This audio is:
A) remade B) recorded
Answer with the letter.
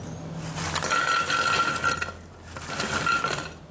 B